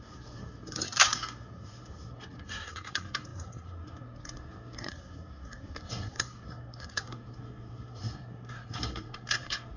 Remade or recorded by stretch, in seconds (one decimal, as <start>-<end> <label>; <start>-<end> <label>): 0.0-9.8 remade